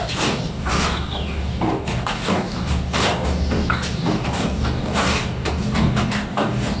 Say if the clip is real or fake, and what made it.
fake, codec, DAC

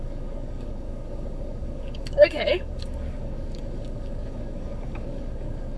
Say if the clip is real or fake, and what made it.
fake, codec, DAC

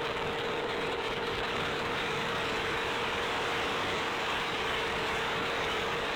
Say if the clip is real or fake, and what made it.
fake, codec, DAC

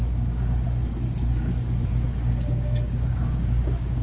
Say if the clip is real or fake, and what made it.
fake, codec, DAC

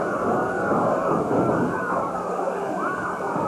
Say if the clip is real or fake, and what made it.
fake, codec, DAC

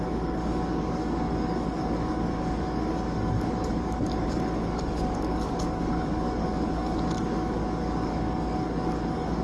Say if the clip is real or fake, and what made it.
fake, codec, DAC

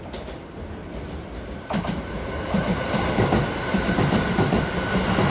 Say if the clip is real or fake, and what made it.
real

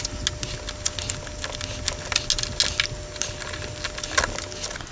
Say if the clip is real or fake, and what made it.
real